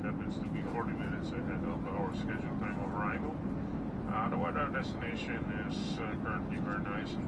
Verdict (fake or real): real